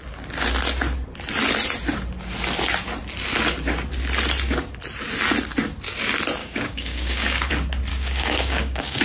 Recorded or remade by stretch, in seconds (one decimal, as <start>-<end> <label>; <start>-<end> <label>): 0.0-6.4 recorded; 6.4-7.5 remade; 7.5-7.9 recorded; 7.9-9.0 remade